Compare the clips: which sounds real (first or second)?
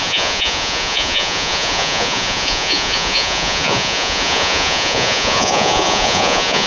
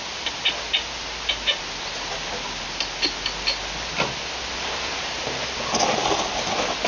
second